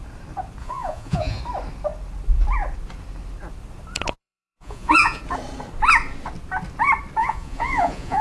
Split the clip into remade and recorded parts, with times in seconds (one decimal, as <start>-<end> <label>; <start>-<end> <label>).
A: 0.0-0.6 recorded; 0.6-1.4 remade; 1.4-4.2 recorded; 4.2-5.2 remade; 5.2-7.2 recorded; 7.2-8.2 remade